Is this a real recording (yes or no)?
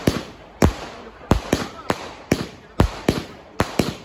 no